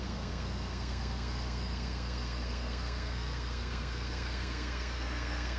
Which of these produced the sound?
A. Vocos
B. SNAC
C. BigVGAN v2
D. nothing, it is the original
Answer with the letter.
B